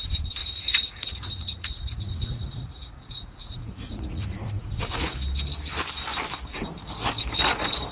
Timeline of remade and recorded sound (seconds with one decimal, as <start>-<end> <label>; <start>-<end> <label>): 0.0-0.4 recorded; 0.4-5.1 remade; 5.1-7.9 recorded